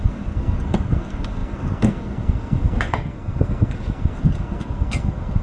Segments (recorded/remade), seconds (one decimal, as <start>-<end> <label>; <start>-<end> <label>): 0.0-5.4 remade